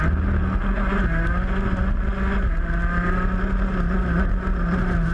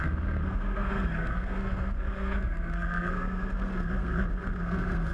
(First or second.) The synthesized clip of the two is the second